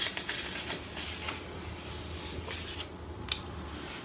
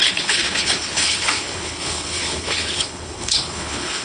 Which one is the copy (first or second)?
second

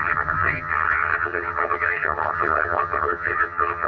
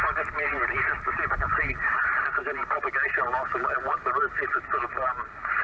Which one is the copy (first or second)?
first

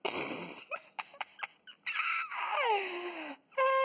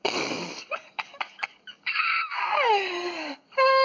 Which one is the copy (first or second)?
second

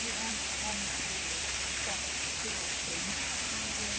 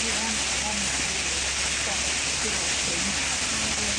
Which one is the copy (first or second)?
first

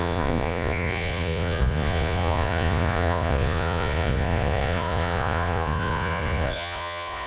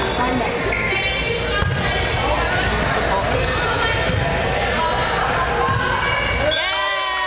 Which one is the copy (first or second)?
first